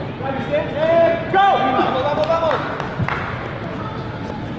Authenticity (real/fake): real